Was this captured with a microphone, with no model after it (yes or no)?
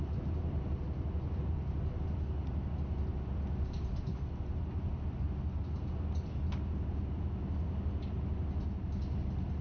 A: yes